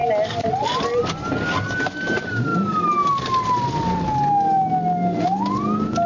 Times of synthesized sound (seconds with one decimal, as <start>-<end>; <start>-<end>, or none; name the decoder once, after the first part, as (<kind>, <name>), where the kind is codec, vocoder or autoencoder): none